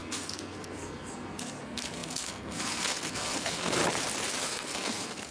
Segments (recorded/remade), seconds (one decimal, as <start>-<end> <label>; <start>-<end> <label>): 0.0-3.8 remade; 3.8-4.4 recorded; 4.4-5.3 remade